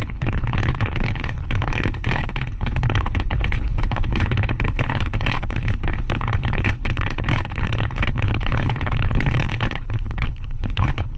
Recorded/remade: remade